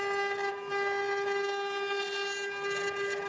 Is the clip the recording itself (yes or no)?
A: yes